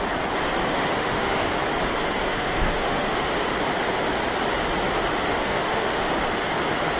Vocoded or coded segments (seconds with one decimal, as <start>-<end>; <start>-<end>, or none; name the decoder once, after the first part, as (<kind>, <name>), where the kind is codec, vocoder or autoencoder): 0.7-1.4 (autoencoder, DAC-VAE); 2.3-3.3; 5.3-6.1